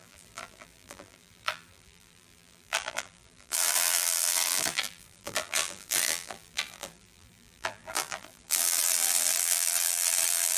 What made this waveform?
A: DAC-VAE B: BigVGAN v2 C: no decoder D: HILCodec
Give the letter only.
B